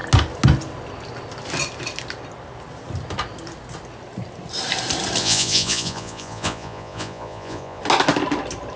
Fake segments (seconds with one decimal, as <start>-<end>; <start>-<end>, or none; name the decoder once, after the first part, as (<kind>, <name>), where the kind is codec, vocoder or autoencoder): 5.2-7.8 (vocoder, Vocos)